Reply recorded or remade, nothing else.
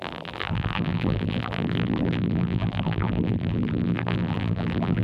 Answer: remade